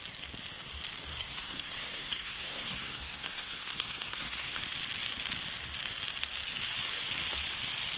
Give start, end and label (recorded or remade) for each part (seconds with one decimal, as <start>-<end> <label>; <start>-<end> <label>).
0.0-1.1 recorded; 1.1-4.6 remade; 4.6-8.0 recorded

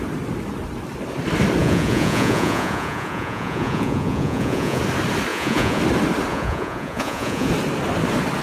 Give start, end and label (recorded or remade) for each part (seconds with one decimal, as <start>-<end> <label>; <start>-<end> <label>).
0.0-1.6 recorded; 1.6-4.8 remade; 4.8-5.3 recorded; 5.3-5.8 remade; 5.8-6.3 recorded; 6.3-7.5 remade; 7.5-8.4 recorded

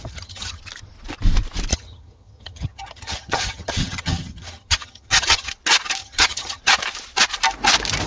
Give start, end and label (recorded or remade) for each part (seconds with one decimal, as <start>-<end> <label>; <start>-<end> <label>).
0.0-0.6 remade; 0.6-1.7 recorded; 1.7-5.5 remade; 5.5-6.0 recorded; 6.0-6.6 remade; 6.6-8.1 recorded

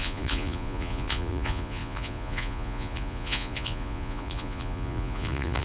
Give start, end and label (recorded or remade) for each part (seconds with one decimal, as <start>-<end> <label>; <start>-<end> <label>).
0.0-5.6 remade

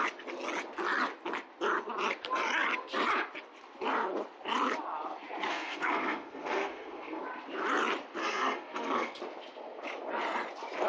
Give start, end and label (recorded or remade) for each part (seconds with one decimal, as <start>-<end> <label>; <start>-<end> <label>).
0.0-5.5 recorded; 5.5-7.2 remade; 7.2-8.2 recorded; 8.2-9.2 remade; 9.2-10.9 recorded

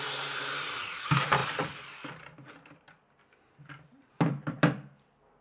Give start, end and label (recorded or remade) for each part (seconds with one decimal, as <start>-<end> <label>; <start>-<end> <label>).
0.0-5.4 recorded

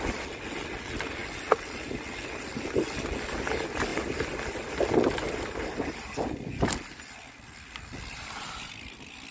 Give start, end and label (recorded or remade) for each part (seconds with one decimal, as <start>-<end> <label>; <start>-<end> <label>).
0.0-9.3 recorded